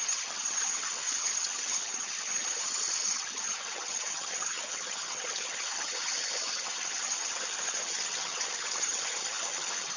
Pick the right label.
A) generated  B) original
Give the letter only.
A